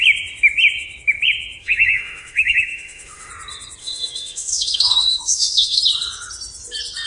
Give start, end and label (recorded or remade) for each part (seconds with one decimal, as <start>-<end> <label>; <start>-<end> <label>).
0.0-1.6 recorded; 1.6-3.3 remade; 3.3-3.8 recorded; 3.8-5.8 remade; 5.8-7.1 recorded